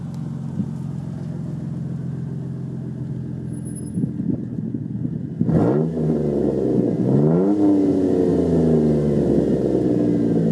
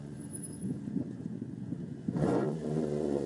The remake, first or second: second